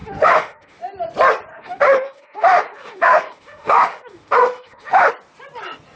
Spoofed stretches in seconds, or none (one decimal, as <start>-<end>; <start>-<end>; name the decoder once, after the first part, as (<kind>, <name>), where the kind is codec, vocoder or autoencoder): 0.0-0.8 (autoencoder, DAC-VAE); 1.5-5.1